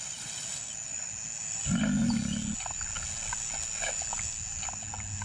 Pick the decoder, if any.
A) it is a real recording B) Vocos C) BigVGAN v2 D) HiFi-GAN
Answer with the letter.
A